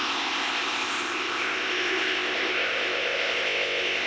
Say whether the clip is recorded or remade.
remade